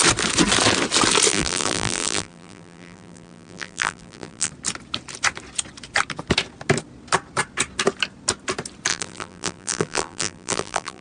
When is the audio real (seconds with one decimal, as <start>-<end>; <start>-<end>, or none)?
0.0-1.3; 4.5-8.9